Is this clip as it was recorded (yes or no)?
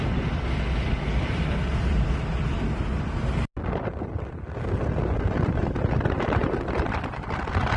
yes